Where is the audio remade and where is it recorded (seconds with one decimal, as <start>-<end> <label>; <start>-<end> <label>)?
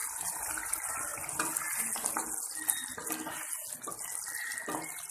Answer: 0.0-5.1 recorded